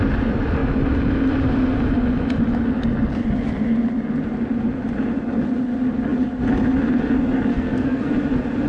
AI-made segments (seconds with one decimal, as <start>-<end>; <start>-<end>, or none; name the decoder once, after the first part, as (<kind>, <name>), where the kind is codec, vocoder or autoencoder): 7.5-8.1 (codec, SNAC)